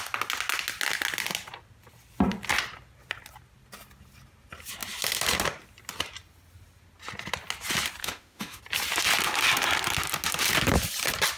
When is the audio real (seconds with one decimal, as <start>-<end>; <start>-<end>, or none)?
0.0-8.0; 8.6-11.4